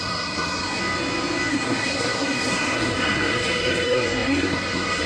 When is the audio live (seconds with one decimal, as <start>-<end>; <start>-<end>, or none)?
0.8-1.5